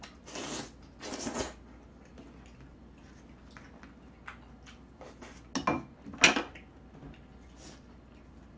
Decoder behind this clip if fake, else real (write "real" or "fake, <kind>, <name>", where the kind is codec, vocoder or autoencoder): real